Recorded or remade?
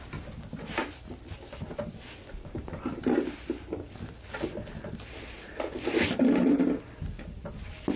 recorded